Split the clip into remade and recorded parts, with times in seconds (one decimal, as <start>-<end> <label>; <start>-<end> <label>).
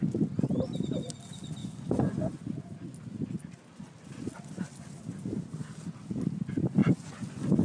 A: 0.0-1.6 recorded; 1.6-2.4 remade; 2.4-6.8 recorded; 6.8-7.6 remade